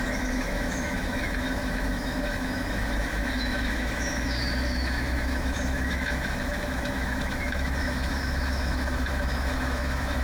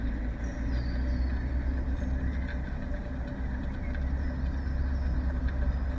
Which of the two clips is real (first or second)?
second